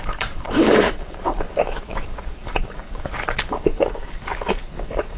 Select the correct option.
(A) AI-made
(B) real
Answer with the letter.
A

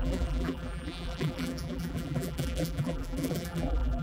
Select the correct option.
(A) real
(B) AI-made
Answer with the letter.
B